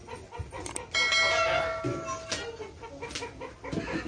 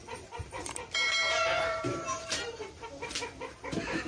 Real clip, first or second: first